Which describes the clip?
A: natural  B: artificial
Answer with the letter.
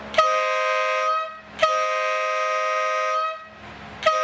A